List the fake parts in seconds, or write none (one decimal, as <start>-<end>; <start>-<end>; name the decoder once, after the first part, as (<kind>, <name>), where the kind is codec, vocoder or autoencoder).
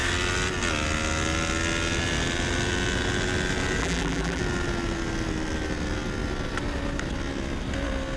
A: 3.8-4.4 (vocoder, BigVGAN v2)